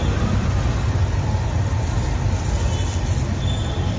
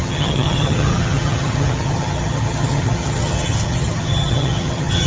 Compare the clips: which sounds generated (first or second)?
second